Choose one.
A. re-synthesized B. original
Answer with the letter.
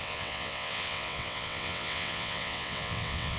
A